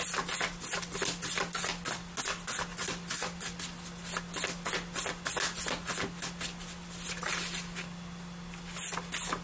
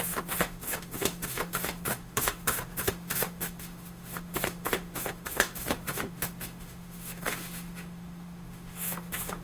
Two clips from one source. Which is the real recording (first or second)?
first